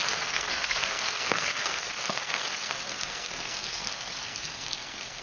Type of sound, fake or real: fake